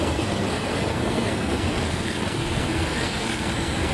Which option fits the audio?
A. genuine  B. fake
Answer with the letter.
B